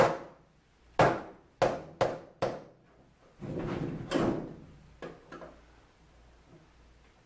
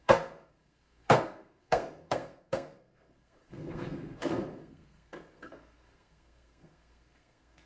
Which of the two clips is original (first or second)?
first